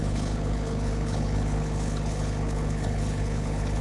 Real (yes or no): no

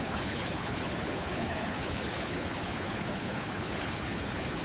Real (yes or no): no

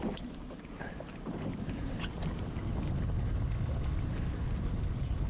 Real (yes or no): yes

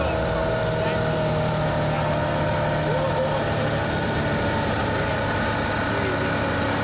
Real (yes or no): yes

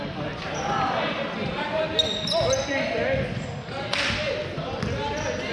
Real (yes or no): yes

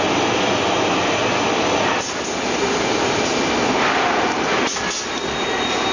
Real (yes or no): yes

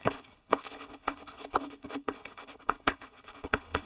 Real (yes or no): no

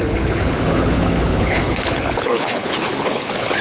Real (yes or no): no